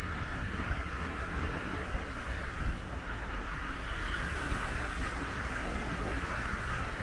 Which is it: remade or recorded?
remade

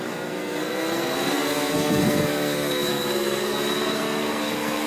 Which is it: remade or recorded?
remade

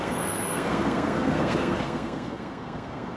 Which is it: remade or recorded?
remade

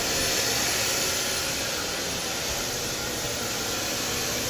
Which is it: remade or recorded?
recorded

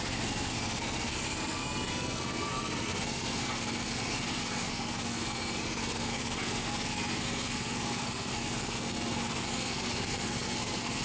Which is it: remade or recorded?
remade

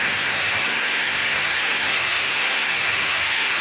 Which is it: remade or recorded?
remade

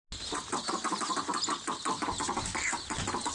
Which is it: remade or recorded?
recorded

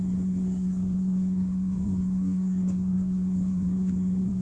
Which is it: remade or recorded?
remade